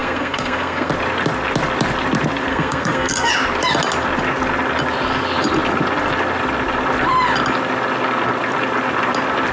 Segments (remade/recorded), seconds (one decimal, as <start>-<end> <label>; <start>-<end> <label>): 0.0-0.9 remade; 0.9-2.5 recorded; 2.5-3.3 remade; 3.3-9.5 recorded